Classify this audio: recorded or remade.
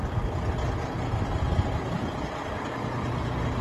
recorded